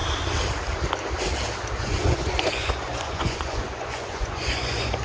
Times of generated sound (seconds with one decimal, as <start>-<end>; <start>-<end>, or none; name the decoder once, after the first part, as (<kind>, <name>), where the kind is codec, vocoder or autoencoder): 1.8-5.0 (vocoder, Vocos)